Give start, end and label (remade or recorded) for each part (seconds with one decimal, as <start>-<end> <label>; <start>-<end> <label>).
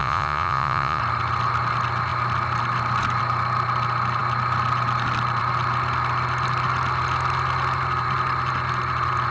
0.0-1.0 remade; 1.0-9.3 recorded